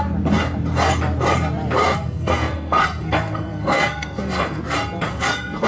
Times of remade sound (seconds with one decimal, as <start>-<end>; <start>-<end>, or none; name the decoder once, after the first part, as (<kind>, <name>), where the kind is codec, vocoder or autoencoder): 1.8-4.6 (codec, SNAC); 5.1-5.7